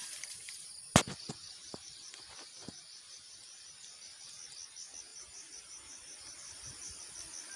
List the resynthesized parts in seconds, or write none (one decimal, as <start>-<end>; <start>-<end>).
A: 0.0-0.7; 1.6-2.2; 2.6-3.7; 5.1-7.0